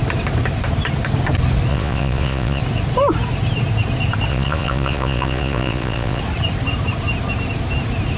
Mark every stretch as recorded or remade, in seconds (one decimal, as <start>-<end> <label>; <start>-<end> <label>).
0.0-1.7 recorded; 1.7-2.6 remade; 2.6-4.3 recorded; 4.3-6.2 remade; 6.2-8.2 recorded